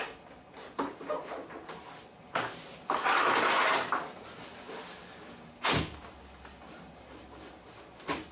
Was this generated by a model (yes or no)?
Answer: no